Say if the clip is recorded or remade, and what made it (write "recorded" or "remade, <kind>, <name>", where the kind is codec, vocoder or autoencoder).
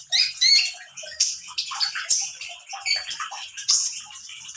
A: remade, vocoder, BigVGAN v2